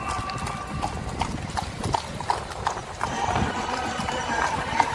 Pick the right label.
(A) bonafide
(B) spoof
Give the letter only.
B